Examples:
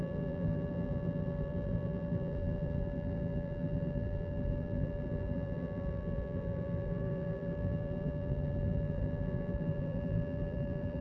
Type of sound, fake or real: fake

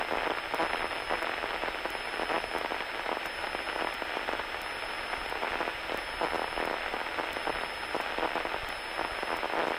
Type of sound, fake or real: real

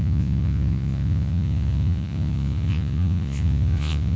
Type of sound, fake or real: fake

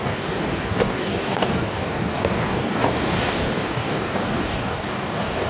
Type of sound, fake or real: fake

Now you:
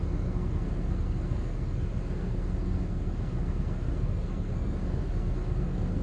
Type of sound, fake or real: fake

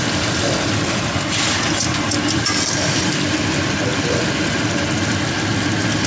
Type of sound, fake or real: real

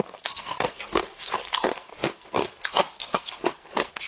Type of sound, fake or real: fake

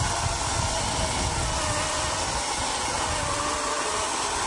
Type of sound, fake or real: real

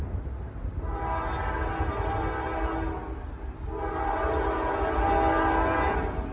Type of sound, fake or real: real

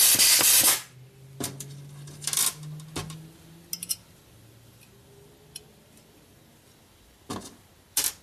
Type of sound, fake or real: real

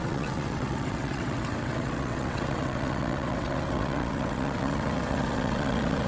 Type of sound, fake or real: fake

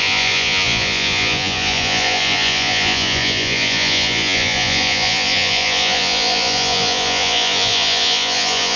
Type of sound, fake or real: fake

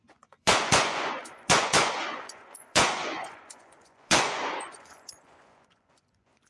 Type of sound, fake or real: fake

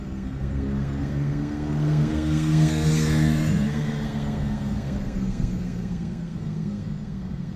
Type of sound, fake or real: fake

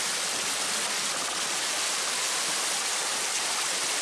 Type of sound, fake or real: real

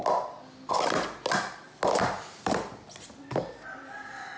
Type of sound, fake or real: real